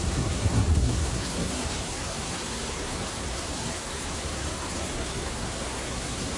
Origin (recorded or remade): remade